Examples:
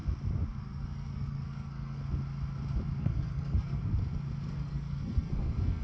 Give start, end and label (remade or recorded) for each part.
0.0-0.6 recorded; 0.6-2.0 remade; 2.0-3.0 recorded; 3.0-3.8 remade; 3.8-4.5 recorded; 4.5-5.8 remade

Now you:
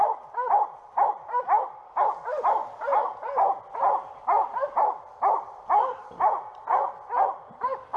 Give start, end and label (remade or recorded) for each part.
0.0-8.0 recorded

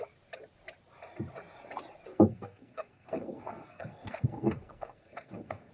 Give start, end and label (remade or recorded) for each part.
0.0-2.1 recorded; 2.1-5.7 remade

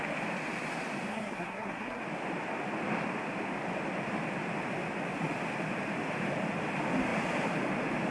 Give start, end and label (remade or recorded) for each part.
0.0-1.1 recorded; 1.1-2.0 remade; 2.0-8.1 recorded

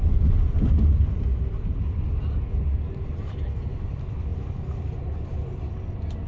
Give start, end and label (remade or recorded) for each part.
0.0-6.3 recorded

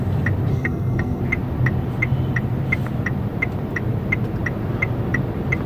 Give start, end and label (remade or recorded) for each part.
0.0-0.5 recorded; 0.5-1.2 remade; 1.2-5.7 recorded

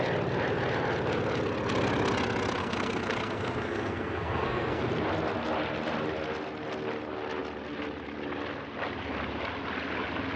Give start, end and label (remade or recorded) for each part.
0.0-2.6 recorded; 2.6-4.8 remade; 4.8-10.4 recorded

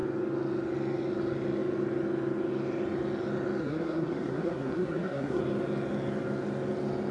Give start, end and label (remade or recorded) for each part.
0.0-3.6 recorded; 3.6-5.4 remade; 5.4-7.1 recorded